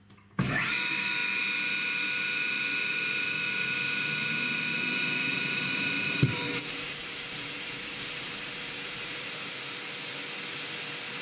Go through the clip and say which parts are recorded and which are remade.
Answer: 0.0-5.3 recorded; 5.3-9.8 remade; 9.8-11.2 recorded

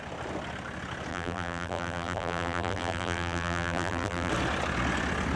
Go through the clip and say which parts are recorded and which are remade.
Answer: 0.0-1.1 recorded; 1.1-4.3 remade; 4.3-5.4 recorded

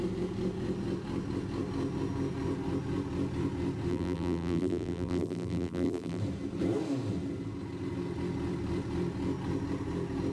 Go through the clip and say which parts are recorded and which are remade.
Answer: 0.0-3.9 recorded; 3.9-6.2 remade; 6.2-10.3 recorded